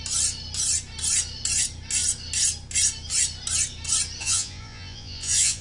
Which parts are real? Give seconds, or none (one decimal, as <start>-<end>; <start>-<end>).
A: 0.0-4.2